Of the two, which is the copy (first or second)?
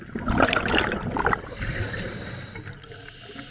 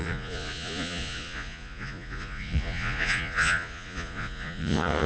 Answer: second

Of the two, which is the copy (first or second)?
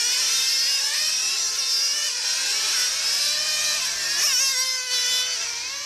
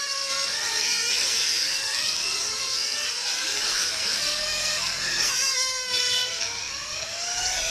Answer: second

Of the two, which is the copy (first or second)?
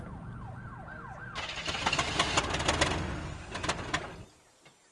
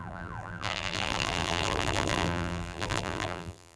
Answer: second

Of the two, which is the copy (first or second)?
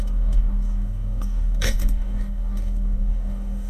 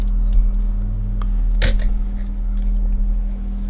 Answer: first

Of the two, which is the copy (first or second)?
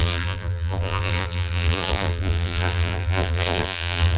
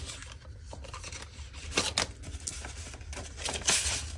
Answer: first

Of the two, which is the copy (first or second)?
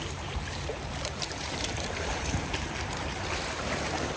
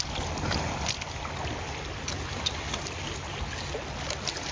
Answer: first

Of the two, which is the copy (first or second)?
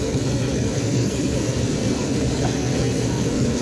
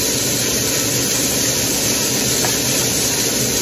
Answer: first